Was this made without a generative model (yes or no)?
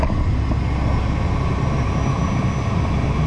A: yes